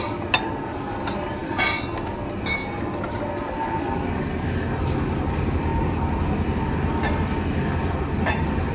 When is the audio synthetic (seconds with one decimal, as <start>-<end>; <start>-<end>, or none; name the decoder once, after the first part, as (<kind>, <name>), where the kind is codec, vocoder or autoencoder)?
none